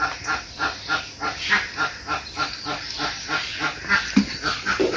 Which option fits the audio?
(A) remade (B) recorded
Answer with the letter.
B